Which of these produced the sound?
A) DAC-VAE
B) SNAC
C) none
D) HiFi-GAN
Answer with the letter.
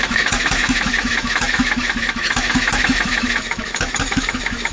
A